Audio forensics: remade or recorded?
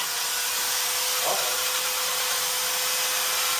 recorded